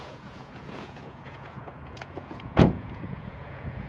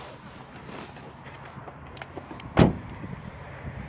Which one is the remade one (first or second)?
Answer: first